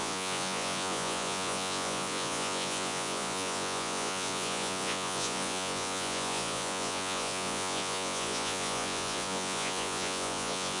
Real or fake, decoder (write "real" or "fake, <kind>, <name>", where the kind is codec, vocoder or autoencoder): fake, vocoder, Vocos